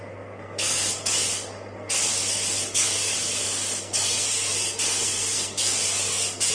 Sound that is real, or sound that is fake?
fake